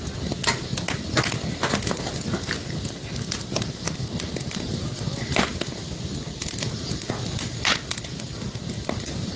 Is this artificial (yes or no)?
no